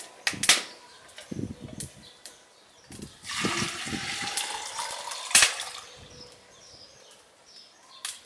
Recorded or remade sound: recorded